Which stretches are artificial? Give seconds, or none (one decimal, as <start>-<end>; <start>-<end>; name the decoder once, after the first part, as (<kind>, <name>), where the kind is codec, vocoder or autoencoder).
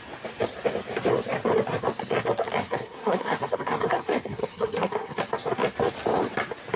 2.6-5.2 (codec, SNAC)